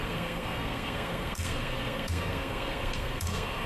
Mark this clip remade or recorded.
remade